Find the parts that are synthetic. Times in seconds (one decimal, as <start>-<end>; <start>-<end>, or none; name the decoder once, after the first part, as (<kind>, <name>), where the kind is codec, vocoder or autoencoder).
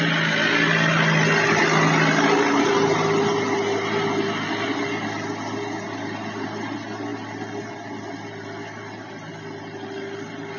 none